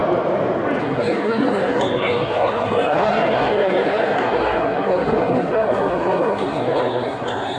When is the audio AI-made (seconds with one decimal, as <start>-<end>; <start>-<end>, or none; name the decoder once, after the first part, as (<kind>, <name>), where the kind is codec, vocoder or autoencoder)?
0.8-7.6 (codec, SNAC)